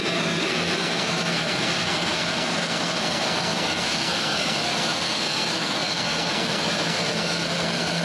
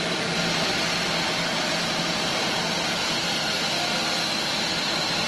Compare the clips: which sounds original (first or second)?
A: second